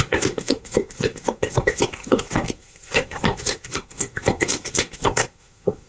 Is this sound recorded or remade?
remade